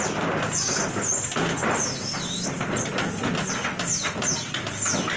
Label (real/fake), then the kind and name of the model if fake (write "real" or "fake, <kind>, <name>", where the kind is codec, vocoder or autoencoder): real